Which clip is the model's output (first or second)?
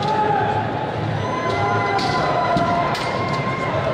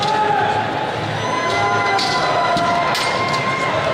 first